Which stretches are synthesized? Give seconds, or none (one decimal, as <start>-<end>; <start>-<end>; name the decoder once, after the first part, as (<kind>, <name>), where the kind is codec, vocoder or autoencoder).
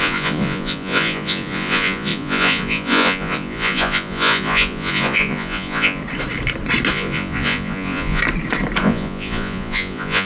0.0-6.0 (vocoder, Vocos); 6.9-8.2; 8.8-10.3